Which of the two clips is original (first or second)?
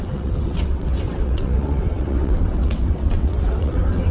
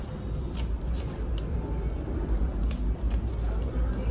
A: second